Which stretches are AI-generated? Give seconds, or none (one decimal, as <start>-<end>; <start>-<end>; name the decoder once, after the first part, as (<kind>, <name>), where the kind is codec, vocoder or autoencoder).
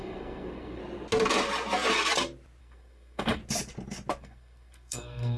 0.0-0.8 (codec, SNAC); 2.6-3.4; 4.2-5.4